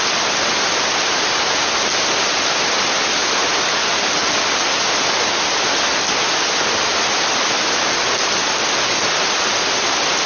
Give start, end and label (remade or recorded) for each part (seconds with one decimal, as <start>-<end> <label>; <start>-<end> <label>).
0.0-10.3 recorded